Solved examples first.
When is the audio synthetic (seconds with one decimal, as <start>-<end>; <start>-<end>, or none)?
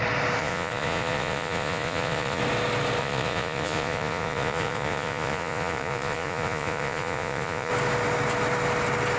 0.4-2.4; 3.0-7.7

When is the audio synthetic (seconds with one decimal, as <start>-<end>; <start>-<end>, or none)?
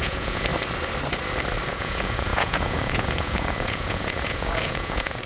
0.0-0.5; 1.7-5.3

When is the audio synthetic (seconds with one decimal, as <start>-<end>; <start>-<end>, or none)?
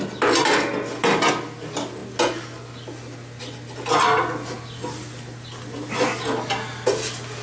none